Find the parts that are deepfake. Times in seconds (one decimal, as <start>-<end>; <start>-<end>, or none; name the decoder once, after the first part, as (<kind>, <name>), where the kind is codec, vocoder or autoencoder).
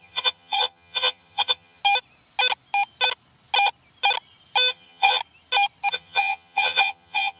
0.0-1.8 (vocoder, HiFi-GAN); 4.7-5.2; 5.9-7.4